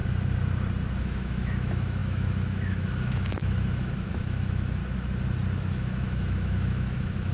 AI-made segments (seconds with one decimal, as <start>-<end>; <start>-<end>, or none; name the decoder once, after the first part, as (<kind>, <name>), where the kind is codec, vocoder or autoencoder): 1.0-4.8 (autoencoder, DAC-VAE); 5.6-7.3